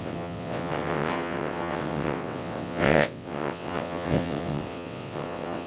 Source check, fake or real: fake